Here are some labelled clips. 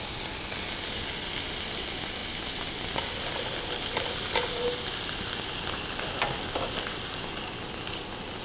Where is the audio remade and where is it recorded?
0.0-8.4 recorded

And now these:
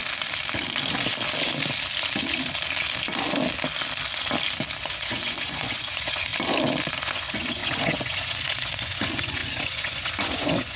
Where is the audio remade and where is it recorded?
0.0-4.8 recorded; 4.8-6.3 remade; 6.3-6.9 recorded; 6.9-10.8 remade

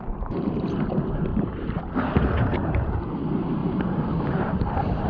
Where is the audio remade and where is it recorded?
0.0-1.3 recorded; 1.3-1.8 remade; 1.8-2.5 recorded; 2.5-3.0 remade; 3.0-3.6 recorded; 3.6-5.1 remade

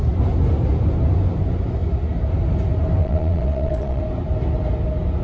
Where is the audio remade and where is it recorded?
0.0-3.0 recorded; 3.0-4.0 remade; 4.0-5.2 recorded